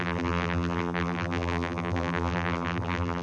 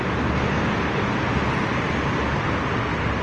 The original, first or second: second